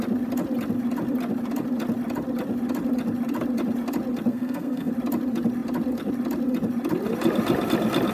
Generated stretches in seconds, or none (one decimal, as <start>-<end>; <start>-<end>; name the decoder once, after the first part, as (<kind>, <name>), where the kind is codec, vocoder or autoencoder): 4.3-4.9 (codec, SNAC)